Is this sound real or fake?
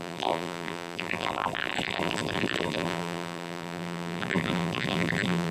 fake